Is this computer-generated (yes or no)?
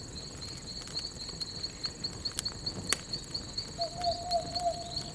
no